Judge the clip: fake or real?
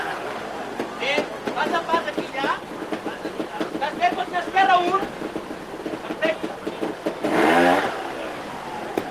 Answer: real